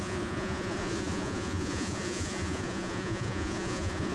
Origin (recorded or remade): remade